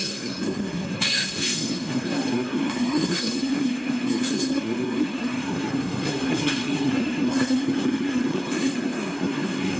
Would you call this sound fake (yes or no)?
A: yes